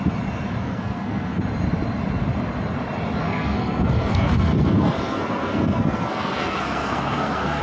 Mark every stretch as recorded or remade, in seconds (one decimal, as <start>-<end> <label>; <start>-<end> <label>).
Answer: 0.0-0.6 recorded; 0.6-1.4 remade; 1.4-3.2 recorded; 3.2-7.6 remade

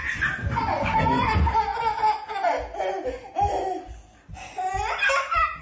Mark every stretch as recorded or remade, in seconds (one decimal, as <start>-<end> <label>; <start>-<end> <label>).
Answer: 0.0-5.6 recorded

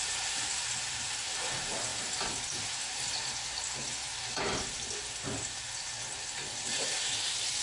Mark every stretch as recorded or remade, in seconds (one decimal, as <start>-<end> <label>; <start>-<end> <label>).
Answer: 0.0-7.6 recorded